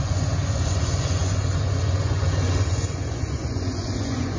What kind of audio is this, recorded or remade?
remade